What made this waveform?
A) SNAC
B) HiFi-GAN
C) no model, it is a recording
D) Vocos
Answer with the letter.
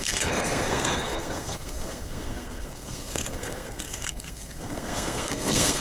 A